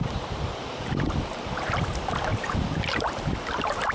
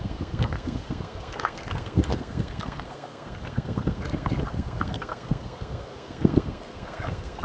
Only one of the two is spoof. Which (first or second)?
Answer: second